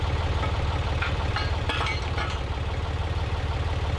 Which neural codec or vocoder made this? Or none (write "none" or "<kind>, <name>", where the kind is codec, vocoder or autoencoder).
vocoder, BigVGAN v2